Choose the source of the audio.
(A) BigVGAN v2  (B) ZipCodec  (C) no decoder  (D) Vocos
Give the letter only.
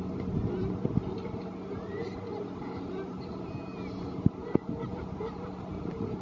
C